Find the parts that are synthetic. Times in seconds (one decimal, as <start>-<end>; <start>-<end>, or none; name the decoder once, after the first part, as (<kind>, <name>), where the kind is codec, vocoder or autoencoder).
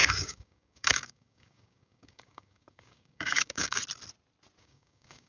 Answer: 0.0-3.8 (codec, DAC); 4.6-5.3